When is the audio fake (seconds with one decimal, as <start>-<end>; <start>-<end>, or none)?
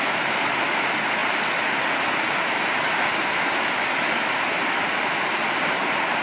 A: none